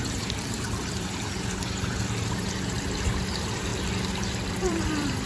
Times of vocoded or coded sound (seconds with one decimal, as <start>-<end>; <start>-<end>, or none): 0.0-3.7; 4.5-5.3